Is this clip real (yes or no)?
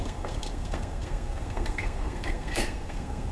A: no